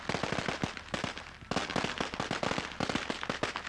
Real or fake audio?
real